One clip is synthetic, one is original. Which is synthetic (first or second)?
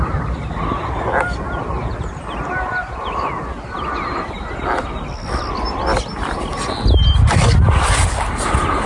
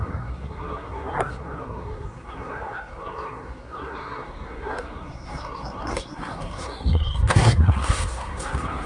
second